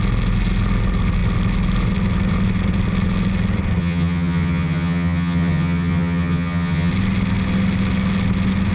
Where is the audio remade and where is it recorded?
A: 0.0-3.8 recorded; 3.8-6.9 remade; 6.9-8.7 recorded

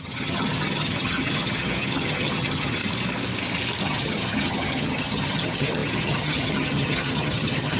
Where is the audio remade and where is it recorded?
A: 0.0-2.8 remade; 2.8-3.8 recorded; 3.8-7.8 remade

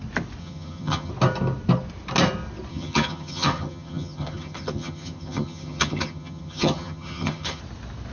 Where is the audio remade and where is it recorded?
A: 0.0-0.4 recorded; 0.4-1.1 remade; 1.1-2.7 recorded; 2.7-7.6 remade; 7.6-8.1 recorded

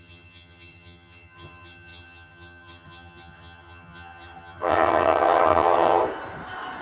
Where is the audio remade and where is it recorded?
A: 0.0-6.0 remade; 6.0-6.8 recorded

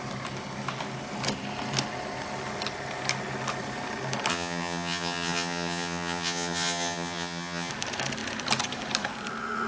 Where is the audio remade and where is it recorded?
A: 0.0-4.3 recorded; 4.3-7.7 remade; 7.7-9.7 recorded

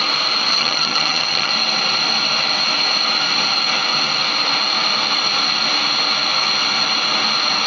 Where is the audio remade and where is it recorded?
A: 0.0-0.5 recorded; 0.5-1.5 remade; 1.5-7.7 recorded

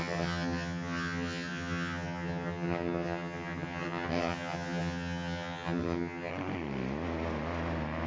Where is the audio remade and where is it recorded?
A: 0.0-6.3 remade; 6.3-8.1 recorded